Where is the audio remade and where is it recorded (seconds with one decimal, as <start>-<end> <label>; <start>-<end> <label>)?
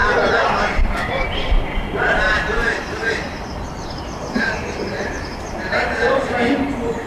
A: 0.0-7.1 recorded